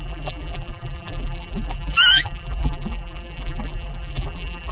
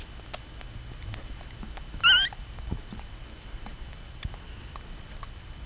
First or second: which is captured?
second